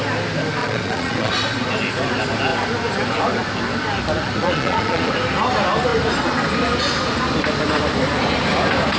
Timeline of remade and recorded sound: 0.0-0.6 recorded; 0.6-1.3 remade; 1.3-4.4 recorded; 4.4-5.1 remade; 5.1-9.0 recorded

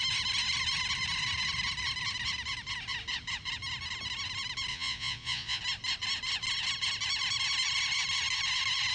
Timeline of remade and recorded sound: 0.0-4.7 recorded; 4.7-5.6 remade; 5.6-8.9 recorded

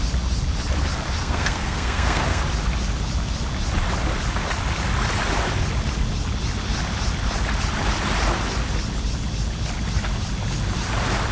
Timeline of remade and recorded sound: 0.0-1.2 recorded; 1.2-2.4 remade; 2.4-11.3 recorded

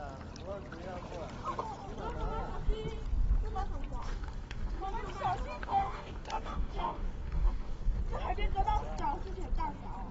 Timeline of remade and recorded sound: 0.0-4.0 recorded; 4.0-4.8 remade; 4.8-5.6 recorded; 5.6-8.0 remade; 8.0-10.1 recorded

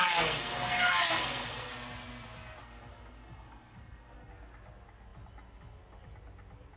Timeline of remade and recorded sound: 0.0-1.7 remade; 1.7-2.6 recorded; 2.6-4.3 remade; 4.3-6.8 recorded

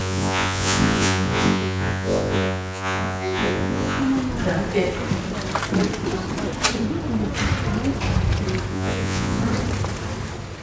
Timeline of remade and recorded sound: 0.0-4.0 remade; 4.0-8.7 recorded; 8.7-9.4 remade; 9.4-10.6 recorded

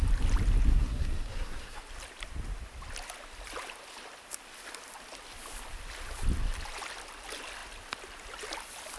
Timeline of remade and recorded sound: 0.0-0.7 recorded; 0.7-1.8 remade; 1.8-9.0 recorded

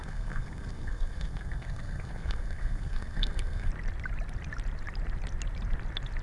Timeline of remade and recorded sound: 0.0-3.7 remade; 3.7-6.2 recorded